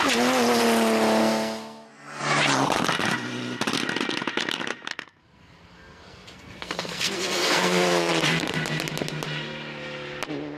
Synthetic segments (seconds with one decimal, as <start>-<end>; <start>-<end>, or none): 1.2-2.2; 4.9-8.1